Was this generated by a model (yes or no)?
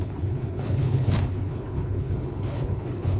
yes